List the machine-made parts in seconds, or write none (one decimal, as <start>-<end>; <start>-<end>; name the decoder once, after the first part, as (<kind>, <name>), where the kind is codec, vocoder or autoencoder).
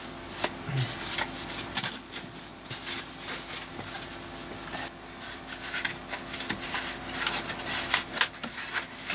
none